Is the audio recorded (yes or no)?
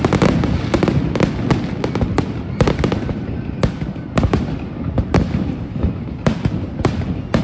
yes